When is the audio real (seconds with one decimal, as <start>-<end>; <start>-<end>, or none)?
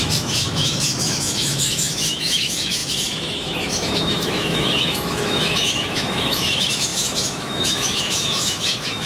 none